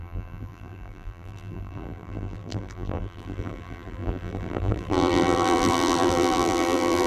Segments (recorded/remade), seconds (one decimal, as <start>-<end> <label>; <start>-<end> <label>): 0.0-7.1 remade